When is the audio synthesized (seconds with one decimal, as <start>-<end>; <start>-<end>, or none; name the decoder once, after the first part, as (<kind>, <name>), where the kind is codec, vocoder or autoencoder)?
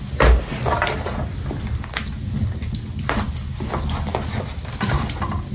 none